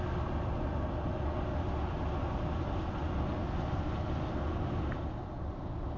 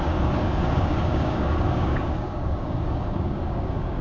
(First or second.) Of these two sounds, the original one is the first